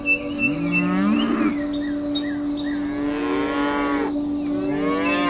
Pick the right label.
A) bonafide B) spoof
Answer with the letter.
A